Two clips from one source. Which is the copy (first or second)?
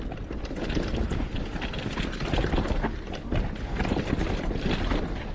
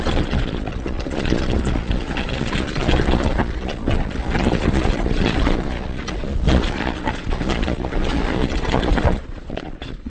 second